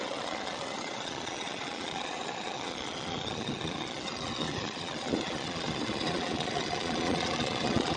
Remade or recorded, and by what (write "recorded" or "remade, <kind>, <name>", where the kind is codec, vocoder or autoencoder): remade, vocoder, Vocos